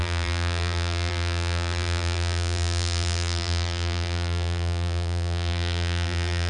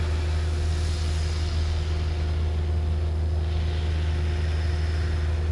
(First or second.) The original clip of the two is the second